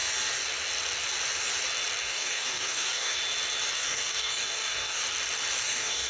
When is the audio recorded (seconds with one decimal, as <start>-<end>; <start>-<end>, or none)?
0.0-2.0; 3.2-3.7; 5.0-5.6